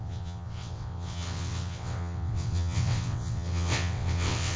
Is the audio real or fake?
fake